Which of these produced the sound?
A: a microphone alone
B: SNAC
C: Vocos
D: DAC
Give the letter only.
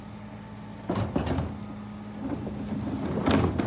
A